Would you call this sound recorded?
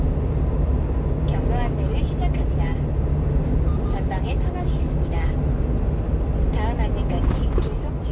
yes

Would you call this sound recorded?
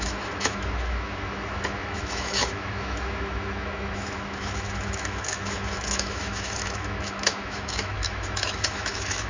no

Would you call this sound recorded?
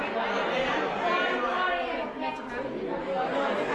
yes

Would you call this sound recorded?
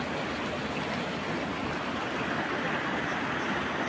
yes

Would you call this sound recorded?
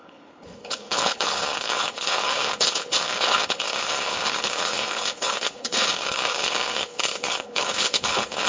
no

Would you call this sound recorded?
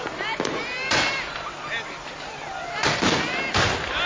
yes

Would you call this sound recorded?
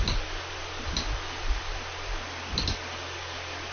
yes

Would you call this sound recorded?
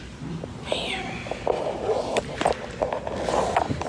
yes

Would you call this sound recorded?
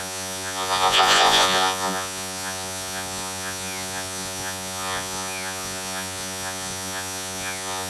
no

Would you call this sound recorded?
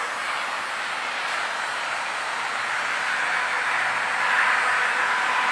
yes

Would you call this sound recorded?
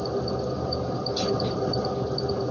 yes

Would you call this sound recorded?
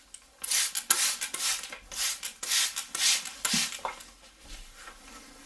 yes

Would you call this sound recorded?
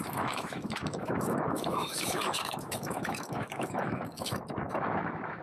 no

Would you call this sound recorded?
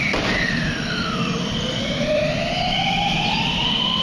no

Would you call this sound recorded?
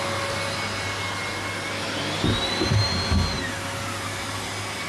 yes